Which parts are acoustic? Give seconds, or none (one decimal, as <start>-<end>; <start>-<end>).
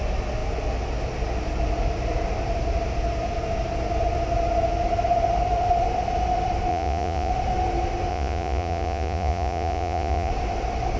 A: 0.0-6.7; 7.3-8.1; 10.3-11.0